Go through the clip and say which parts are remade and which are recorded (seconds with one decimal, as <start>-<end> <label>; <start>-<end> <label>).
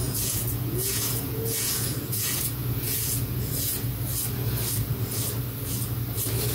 0.0-3.9 remade; 3.9-6.5 recorded